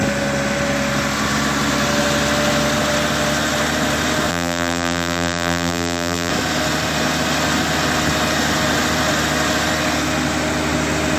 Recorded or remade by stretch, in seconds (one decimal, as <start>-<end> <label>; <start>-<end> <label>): 0.0-4.3 recorded; 4.3-6.3 remade; 6.3-11.2 recorded